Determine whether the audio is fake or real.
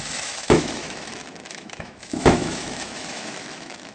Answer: fake